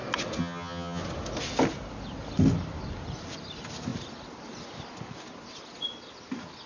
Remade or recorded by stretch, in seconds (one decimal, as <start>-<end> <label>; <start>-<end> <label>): 0.0-0.4 recorded; 0.4-1.0 remade; 1.0-6.7 recorded

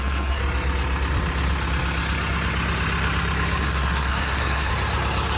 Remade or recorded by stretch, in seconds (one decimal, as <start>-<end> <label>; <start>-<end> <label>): 0.0-0.4 remade; 0.4-3.6 recorded; 3.6-4.7 remade; 4.7-5.4 recorded

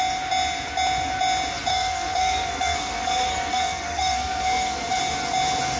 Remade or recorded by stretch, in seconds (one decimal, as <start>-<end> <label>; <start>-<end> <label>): 0.0-1.7 recorded; 1.7-5.0 remade; 5.0-5.8 recorded

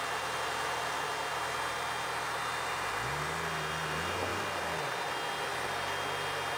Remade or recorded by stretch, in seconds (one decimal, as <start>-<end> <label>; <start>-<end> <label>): 0.0-6.6 recorded

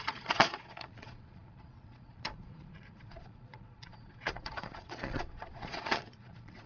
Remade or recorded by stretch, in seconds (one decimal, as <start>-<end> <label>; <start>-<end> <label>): 0.0-6.7 remade

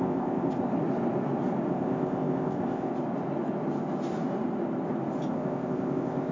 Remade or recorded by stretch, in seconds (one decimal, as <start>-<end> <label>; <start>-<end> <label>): 0.0-0.7 remade; 0.7-1.7 recorded; 1.7-2.9 remade; 2.9-5.3 recorded; 5.3-6.3 remade

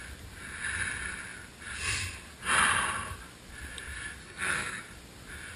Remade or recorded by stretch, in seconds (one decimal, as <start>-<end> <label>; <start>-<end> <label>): 0.0-4.2 recorded; 4.2-4.8 remade; 4.8-5.6 recorded